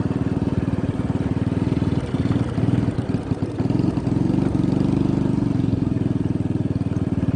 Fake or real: real